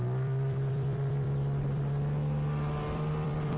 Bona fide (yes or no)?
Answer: no